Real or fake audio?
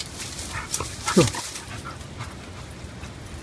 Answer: real